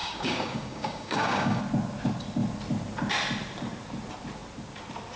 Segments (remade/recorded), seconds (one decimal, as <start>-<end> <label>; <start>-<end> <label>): 0.0-1.6 remade; 1.6-5.2 recorded